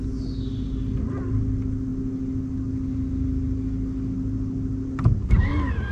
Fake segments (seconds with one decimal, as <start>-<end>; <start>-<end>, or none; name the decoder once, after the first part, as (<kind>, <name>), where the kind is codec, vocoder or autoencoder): none